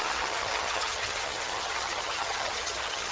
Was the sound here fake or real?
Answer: fake